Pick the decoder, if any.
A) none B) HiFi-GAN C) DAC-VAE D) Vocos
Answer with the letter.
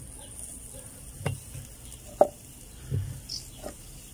A